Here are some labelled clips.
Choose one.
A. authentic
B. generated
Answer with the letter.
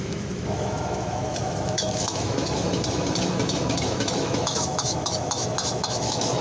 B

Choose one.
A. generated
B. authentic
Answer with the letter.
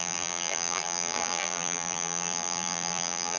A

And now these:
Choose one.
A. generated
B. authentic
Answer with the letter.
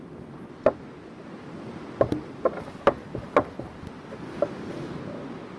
B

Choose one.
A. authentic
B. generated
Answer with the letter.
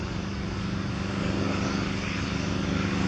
B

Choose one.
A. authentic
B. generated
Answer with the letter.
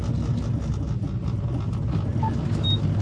A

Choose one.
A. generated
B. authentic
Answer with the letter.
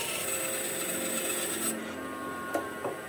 B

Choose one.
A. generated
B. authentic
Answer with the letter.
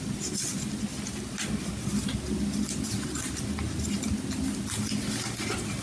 B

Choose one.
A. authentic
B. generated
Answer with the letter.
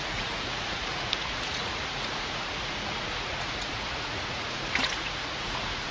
B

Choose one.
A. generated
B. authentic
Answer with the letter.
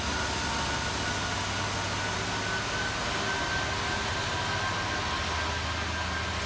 B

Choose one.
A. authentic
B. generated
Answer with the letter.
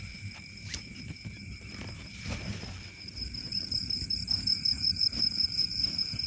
B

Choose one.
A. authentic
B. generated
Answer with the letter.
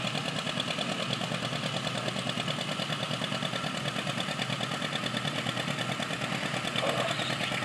A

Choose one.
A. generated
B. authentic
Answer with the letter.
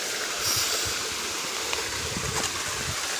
B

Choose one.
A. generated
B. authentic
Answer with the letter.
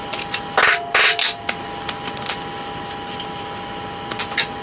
B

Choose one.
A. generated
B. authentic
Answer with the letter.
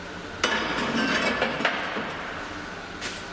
B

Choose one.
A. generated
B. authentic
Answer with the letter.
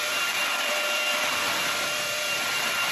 A